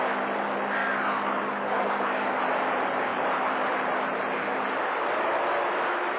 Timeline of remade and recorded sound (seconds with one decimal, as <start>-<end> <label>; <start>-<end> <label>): 0.0-0.8 recorded; 0.8-2.4 remade; 2.4-6.2 recorded